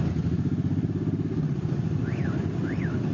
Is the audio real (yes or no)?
yes